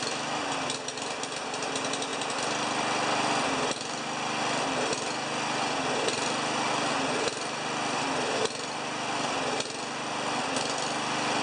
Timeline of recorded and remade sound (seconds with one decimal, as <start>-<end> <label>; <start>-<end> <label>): 0.0-11.4 recorded